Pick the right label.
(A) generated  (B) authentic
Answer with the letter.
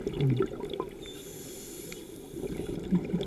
B